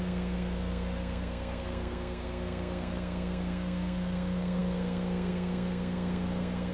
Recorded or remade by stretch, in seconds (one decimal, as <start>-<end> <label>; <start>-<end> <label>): 0.0-6.7 remade

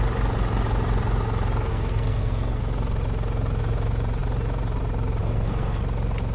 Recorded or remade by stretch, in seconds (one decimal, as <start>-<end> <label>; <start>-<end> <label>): 0.0-1.7 recorded; 1.7-2.6 remade; 2.6-5.2 recorded; 5.2-5.8 remade; 5.8-6.3 recorded

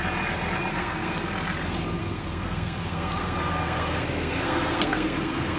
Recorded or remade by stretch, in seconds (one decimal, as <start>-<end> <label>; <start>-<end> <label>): 0.0-0.7 recorded; 0.7-1.2 remade; 1.2-2.0 recorded; 2.0-5.6 remade

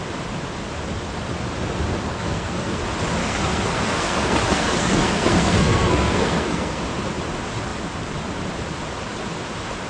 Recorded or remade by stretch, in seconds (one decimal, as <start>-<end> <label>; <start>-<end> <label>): 0.0-2.1 recorded; 2.1-2.8 remade; 2.8-3.2 recorded; 3.2-6.8 remade; 6.8-9.9 recorded

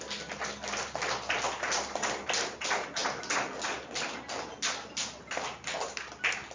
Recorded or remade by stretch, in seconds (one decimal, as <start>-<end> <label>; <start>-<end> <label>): 0.0-6.5 recorded